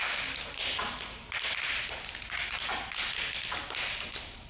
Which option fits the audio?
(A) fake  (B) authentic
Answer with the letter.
B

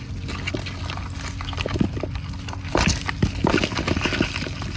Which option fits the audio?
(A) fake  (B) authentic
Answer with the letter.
B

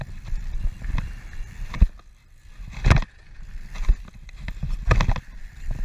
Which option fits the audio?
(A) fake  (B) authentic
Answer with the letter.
A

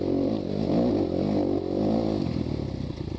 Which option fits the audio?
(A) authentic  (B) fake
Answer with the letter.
A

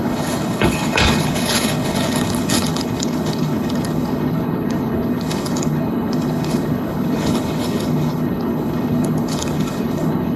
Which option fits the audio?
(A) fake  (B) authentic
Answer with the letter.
A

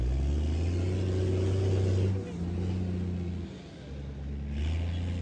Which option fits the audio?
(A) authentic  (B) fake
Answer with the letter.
A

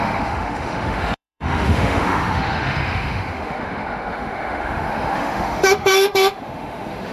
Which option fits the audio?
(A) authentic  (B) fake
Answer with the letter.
B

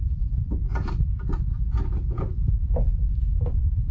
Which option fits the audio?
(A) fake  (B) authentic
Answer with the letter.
B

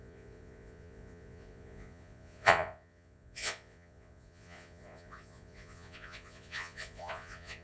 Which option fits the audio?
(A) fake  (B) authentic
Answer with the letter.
A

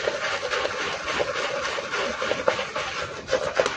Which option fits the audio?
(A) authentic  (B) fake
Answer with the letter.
A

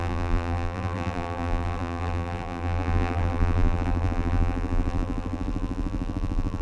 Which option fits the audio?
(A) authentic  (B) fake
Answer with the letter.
B